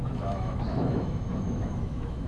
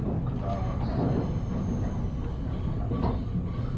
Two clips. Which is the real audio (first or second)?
second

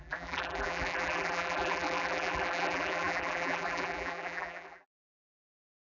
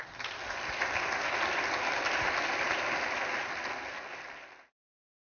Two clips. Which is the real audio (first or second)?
second